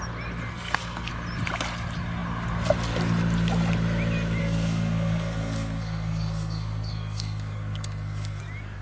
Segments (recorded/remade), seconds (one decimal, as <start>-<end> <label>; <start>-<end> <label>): 0.0-0.5 recorded; 0.5-1.1 remade; 1.1-4.4 recorded; 4.4-8.4 remade; 8.4-8.8 recorded